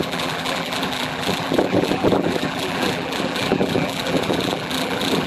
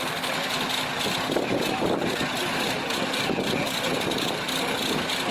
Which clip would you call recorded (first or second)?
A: second